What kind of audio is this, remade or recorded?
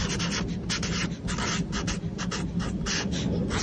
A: recorded